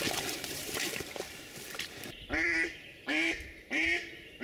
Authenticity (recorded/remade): remade